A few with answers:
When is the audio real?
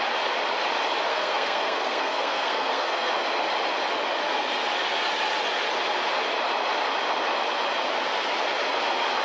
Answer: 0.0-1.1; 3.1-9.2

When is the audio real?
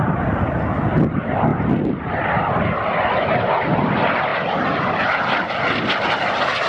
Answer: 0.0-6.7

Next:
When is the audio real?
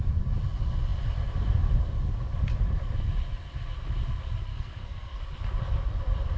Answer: 0.0-4.5; 5.2-6.4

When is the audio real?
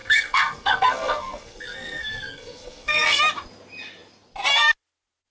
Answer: 3.2-5.3